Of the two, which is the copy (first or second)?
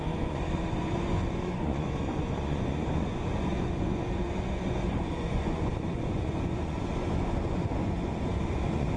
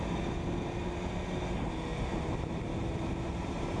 first